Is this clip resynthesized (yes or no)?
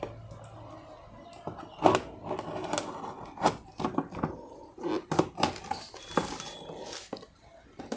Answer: no